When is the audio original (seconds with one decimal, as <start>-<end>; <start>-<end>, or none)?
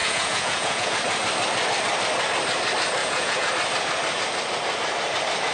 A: 0.9-3.0; 3.5-5.5